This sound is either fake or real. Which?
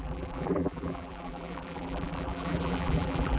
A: fake